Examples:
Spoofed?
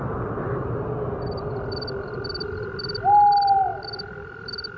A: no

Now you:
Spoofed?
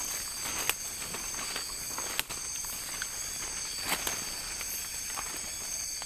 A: no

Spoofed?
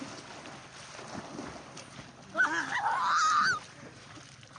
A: no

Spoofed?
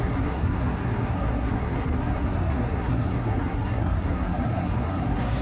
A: yes